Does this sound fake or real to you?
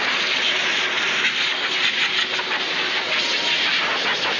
real